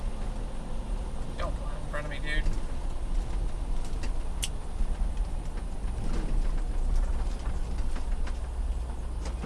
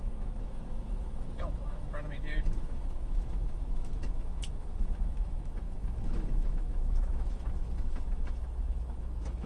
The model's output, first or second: second